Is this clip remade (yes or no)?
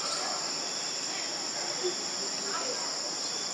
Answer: no